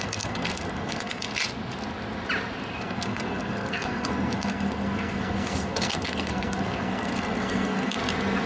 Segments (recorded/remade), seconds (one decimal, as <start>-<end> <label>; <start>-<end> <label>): 0.0-1.3 remade; 1.3-2.8 recorded; 2.8-8.0 remade; 8.0-8.5 recorded